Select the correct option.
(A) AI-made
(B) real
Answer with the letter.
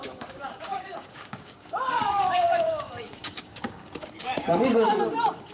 A